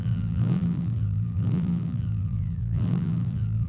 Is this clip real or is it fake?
fake